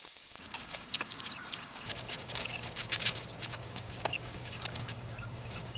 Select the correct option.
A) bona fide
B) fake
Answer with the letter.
B